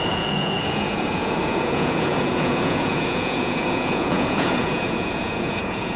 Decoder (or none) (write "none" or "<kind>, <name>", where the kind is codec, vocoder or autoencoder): vocoder, Vocos